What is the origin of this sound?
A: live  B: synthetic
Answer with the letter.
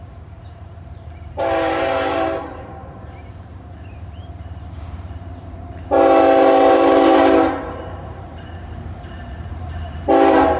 B